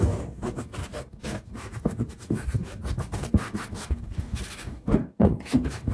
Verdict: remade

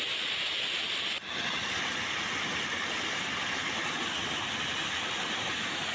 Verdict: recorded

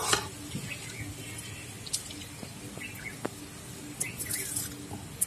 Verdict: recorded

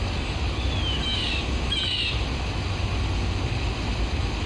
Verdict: recorded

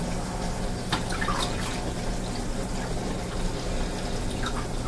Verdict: recorded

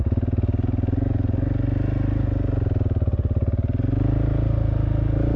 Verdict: recorded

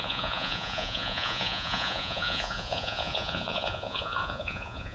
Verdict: remade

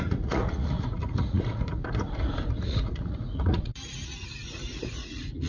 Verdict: remade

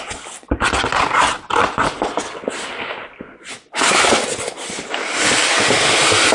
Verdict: recorded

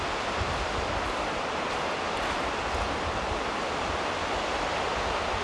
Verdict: recorded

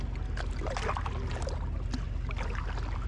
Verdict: recorded